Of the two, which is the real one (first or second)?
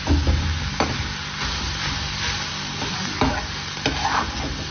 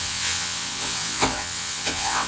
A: first